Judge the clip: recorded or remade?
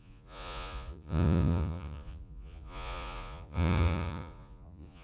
remade